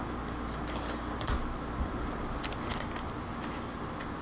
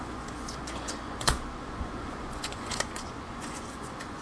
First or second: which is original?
first